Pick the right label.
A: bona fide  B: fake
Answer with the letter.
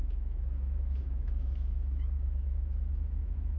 B